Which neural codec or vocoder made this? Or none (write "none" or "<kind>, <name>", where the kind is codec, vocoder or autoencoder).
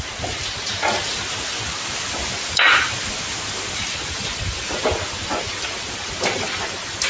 none